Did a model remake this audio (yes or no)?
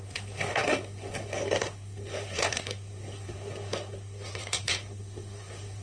yes